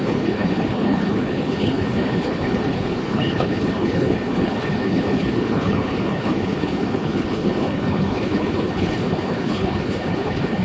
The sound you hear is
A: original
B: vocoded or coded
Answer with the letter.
B